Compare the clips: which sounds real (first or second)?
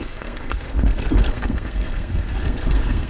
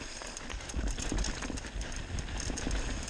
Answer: second